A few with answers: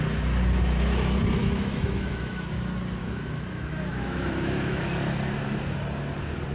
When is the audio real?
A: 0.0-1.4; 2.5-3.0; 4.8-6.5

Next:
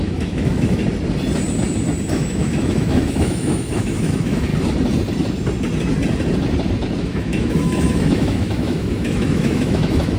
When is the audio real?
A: 0.8-2.1; 4.5-7.0

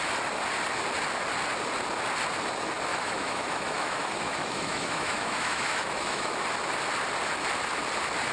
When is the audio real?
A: 0.0-2.9; 6.4-8.3

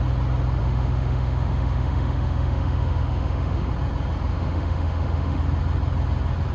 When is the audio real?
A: 0.0-0.6; 3.7-4.3; 5.4-6.5

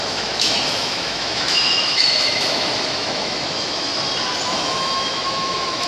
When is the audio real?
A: 3.9-4.5